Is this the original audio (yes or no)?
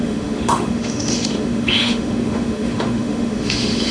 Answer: no